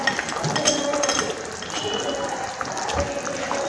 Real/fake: real